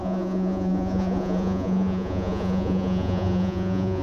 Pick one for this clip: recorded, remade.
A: remade